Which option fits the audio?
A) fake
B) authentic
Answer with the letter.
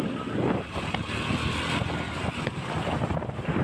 B